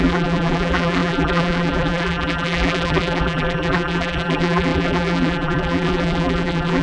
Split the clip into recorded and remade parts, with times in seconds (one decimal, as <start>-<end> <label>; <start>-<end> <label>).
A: 0.0-6.8 remade